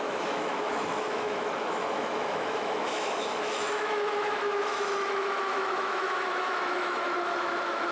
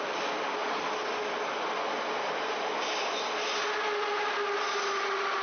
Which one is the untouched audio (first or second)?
second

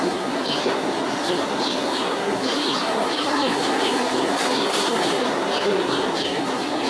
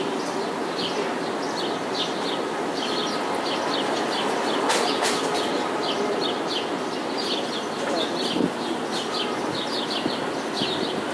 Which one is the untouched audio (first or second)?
second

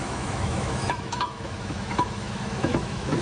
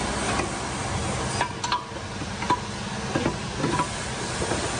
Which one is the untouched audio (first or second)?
second